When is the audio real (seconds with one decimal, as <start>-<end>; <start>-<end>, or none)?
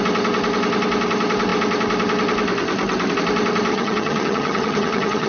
0.0-3.7